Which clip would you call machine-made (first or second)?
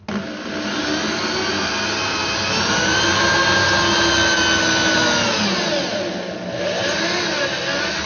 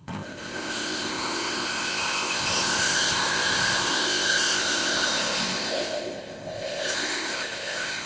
second